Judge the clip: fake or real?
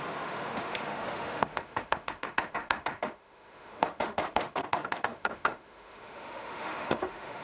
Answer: fake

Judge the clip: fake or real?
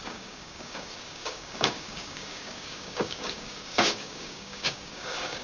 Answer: fake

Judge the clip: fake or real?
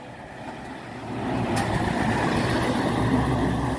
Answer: real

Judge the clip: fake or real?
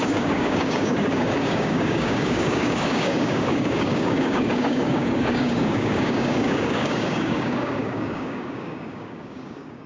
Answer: fake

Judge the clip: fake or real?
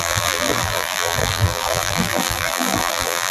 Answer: fake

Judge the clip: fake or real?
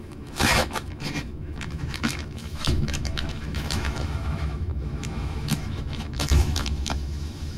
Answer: fake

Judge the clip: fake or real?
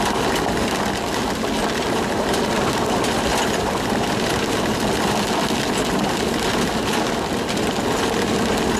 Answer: real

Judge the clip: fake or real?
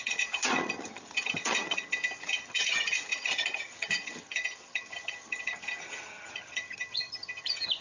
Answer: fake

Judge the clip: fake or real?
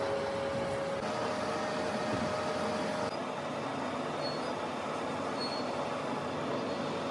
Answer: real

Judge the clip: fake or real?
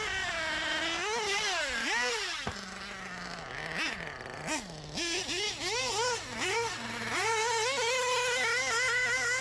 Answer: real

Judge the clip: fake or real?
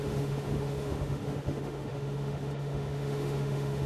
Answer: fake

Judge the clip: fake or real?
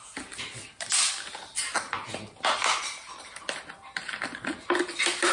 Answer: real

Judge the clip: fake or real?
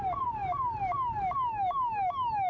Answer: real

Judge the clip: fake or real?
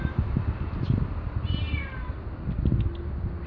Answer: real